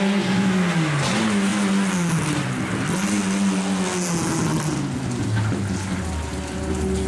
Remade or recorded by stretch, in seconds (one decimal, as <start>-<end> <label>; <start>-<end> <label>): 0.0-7.1 recorded